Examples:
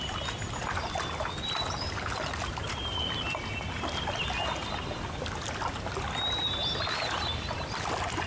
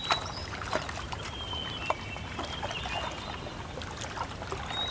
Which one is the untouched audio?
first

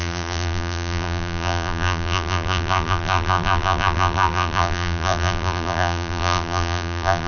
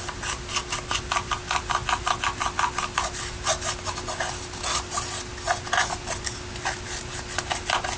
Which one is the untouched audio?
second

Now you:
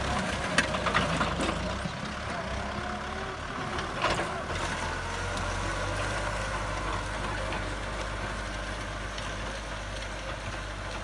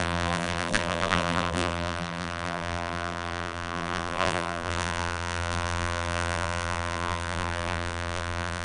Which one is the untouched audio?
first